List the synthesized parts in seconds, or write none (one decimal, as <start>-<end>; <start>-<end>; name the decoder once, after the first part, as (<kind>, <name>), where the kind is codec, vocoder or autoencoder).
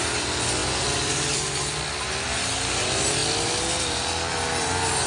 none